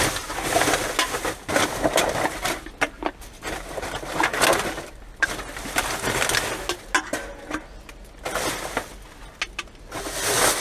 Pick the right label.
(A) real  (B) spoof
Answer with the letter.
A